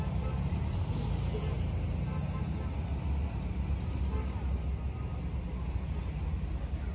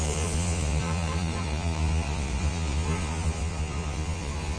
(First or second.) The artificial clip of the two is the second